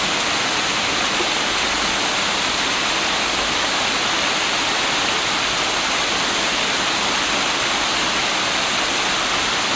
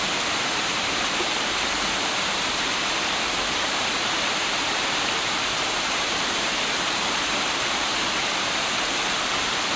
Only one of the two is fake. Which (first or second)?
second